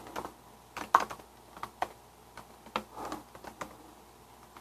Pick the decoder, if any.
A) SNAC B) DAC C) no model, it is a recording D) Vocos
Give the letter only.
C